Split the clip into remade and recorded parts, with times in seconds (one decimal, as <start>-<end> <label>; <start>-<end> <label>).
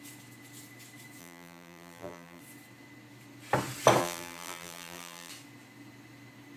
0.0-1.2 recorded; 1.2-2.4 remade; 2.4-4.0 recorded; 4.0-5.3 remade; 5.3-6.6 recorded